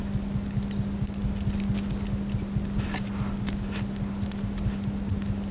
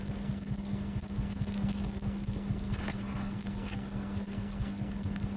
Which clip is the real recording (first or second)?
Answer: first